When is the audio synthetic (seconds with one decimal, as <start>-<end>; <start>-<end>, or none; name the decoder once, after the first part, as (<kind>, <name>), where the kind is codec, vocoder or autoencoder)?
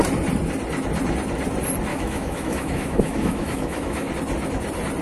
1.9-4.1 (autoencoder, DAC-VAE)